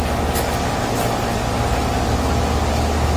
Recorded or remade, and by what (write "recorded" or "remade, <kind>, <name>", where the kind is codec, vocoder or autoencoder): recorded